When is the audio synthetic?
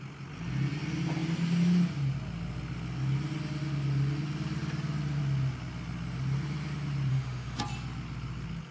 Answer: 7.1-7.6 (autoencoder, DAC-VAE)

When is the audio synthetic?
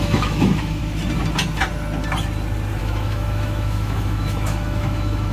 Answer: 0.0-0.8 (autoencoder, DAC-VAE); 2.8-5.3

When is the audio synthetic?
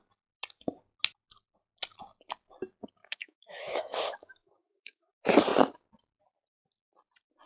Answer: 3.0-5.1 (autoencoder, DAC-VAE)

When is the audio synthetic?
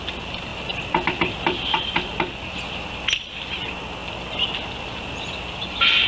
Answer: none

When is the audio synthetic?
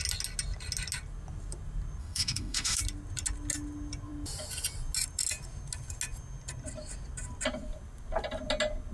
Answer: 2.0-2.8 (autoencoder, DAC-VAE)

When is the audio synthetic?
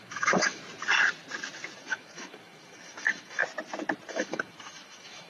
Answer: 0.0-0.6 (autoencoder, DAC-VAE); 1.8-3.4; 4.1-5.3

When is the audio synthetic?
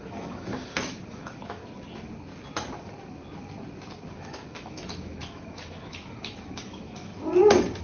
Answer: 0.0-0.5 (autoencoder, DAC-VAE); 1.1-1.6; 4.1-7.1